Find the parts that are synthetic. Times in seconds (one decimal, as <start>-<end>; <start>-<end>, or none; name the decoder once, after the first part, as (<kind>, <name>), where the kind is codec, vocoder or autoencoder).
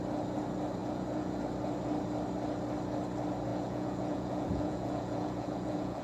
0.8-1.4 (vocoder, Vocos); 3.5-6.0